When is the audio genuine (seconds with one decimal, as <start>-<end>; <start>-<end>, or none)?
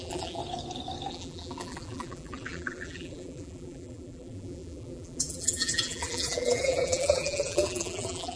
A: 0.4-1.1